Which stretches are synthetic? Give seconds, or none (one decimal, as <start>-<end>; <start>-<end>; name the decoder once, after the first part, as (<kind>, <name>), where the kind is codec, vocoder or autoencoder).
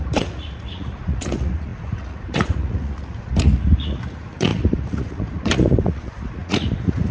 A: 0.0-7.1 (vocoder, Vocos)